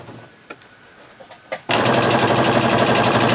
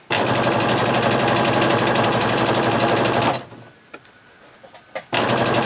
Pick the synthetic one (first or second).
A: first